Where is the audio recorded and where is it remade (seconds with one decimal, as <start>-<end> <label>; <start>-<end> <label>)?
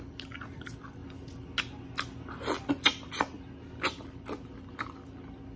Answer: 0.0-5.6 recorded